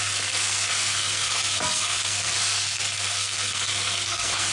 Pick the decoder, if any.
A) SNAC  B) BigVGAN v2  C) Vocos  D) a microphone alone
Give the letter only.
A